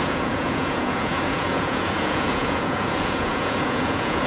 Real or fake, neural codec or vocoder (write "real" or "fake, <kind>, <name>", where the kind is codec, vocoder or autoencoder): fake, vocoder, Vocos